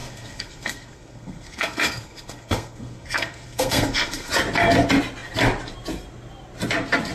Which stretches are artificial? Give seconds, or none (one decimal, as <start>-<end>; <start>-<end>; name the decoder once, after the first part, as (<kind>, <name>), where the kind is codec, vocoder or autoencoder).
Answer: 0.0-4.3 (codec, SNAC)